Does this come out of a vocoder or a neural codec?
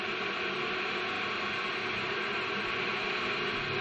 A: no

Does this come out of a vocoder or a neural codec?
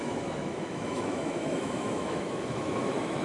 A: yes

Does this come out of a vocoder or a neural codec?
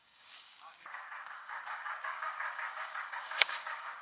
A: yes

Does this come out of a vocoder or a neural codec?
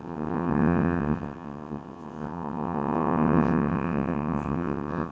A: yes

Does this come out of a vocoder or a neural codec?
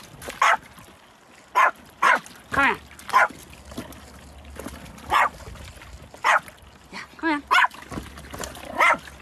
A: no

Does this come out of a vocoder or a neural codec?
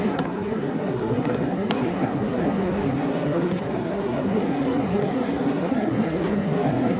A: yes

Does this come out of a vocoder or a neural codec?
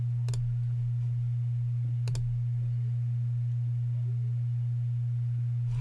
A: no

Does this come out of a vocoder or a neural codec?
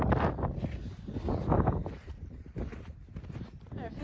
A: no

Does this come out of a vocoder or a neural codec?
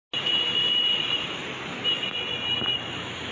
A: no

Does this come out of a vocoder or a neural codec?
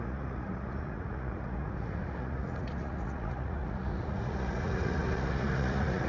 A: yes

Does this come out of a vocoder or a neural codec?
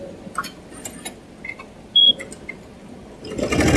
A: no